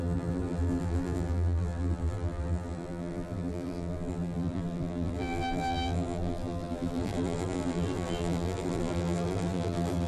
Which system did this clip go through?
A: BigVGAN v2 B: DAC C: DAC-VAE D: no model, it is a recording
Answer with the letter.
A